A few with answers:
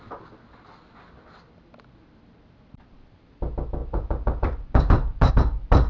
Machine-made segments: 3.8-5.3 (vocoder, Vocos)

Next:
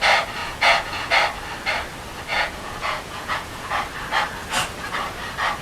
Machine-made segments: 0.4-1.1 (vocoder, Vocos); 2.3-3.7

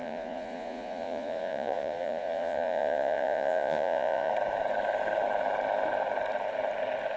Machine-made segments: 0.0-4.3 (vocoder, Vocos)

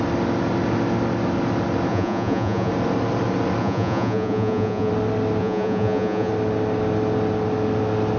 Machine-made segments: 1.9-2.7 (vocoder, Vocos); 3.6-4.9; 5.4-6.3